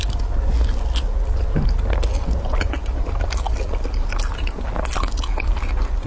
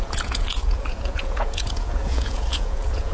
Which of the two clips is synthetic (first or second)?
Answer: second